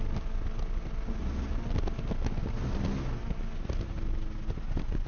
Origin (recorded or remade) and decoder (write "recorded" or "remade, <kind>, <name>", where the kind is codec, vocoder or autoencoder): recorded